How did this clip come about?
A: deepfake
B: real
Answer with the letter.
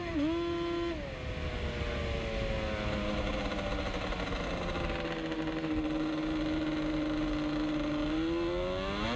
B